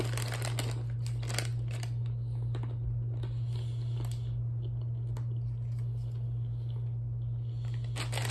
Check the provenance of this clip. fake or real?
real